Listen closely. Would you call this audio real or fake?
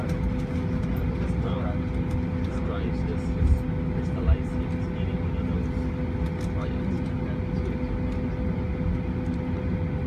real